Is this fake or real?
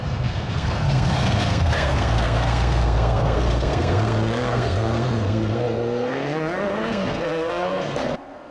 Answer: fake